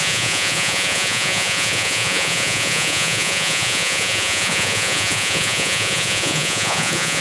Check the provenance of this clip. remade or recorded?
remade